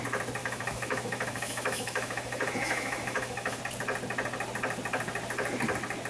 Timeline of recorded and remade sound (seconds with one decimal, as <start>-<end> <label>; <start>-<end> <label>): 0.0-0.4 recorded; 0.4-3.6 remade; 3.6-6.1 recorded